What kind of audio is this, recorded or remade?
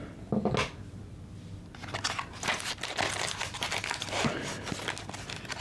recorded